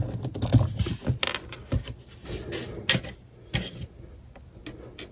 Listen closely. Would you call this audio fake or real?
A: real